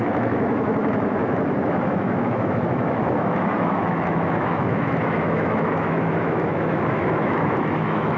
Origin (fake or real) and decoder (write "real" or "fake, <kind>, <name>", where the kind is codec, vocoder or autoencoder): fake, autoencoder, DAC-VAE